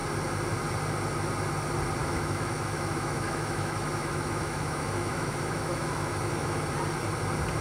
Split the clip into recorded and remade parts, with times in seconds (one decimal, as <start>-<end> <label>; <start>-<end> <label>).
0.0-2.0 recorded; 2.0-6.6 remade; 6.6-7.6 recorded